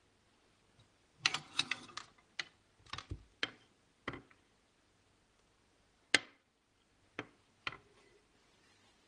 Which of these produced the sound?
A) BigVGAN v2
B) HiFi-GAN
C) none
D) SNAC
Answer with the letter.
C